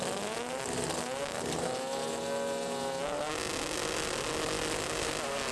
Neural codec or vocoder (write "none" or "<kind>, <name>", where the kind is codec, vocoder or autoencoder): none